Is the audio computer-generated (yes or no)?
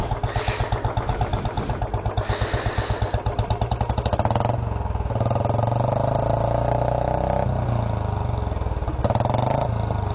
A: no